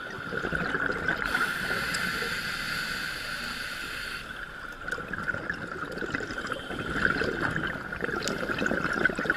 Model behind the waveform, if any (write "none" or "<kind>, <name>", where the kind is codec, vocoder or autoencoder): none